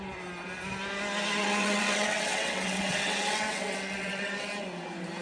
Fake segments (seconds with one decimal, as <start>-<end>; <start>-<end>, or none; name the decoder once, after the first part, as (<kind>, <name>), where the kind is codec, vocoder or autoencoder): 1.4-4.5 (vocoder, WaveNeXt)